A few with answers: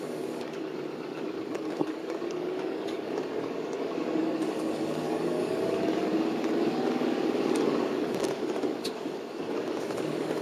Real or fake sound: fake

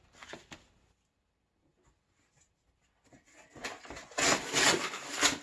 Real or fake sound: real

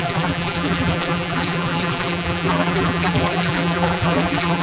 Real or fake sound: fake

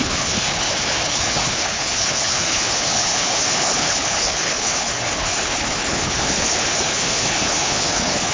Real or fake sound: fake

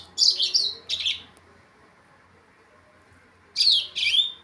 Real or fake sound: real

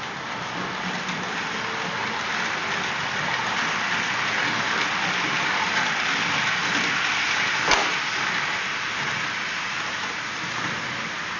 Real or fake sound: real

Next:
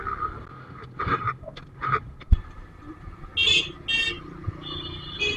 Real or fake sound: real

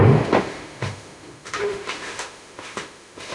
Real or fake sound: fake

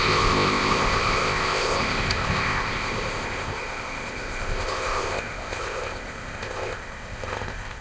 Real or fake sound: fake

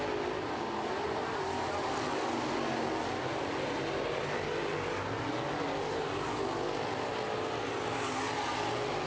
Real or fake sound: real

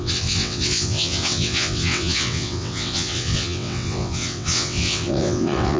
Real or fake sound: fake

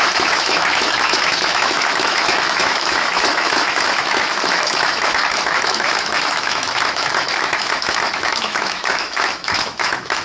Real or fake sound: fake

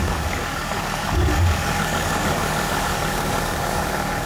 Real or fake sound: fake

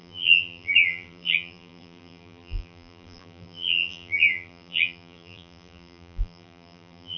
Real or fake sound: fake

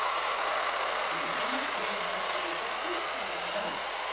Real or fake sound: fake